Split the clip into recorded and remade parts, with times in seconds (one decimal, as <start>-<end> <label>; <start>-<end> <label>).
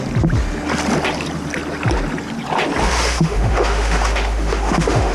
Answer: 0.0-2.8 recorded; 2.8-5.1 remade